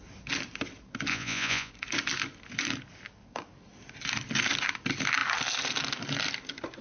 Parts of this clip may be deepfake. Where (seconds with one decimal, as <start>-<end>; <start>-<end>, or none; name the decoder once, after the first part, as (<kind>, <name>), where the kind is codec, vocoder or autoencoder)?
1.1-1.7 (vocoder, Vocos)